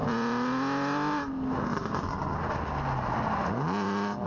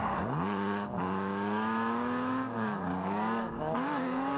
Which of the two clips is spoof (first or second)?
second